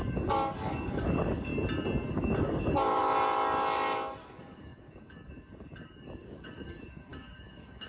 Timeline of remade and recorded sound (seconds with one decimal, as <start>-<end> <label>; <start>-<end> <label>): 0.0-1.5 remade; 1.5-2.1 recorded; 2.1-3.0 remade; 3.0-4.2 recorded; 4.2-7.9 remade